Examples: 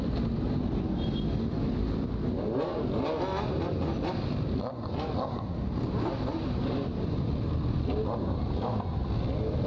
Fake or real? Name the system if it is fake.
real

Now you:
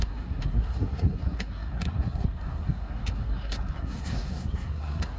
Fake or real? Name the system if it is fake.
fake, codec, SNAC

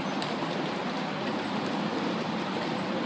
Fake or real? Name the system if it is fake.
real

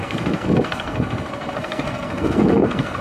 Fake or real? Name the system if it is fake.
fake, codec, SNAC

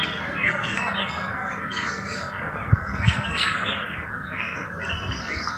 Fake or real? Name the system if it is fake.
fake, codec, SNAC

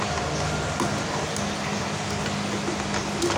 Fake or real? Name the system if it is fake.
real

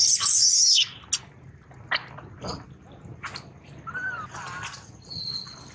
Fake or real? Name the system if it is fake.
real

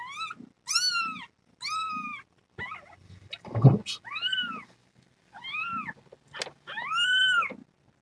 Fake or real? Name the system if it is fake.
real